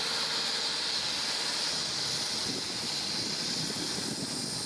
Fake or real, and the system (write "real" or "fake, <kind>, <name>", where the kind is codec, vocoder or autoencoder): real